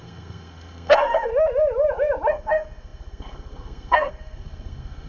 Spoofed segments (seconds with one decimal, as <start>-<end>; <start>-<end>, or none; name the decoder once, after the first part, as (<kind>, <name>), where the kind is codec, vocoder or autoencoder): 0.0-1.3 (codec, SNAC); 2.3-5.1